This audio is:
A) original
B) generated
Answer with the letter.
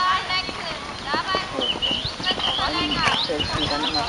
A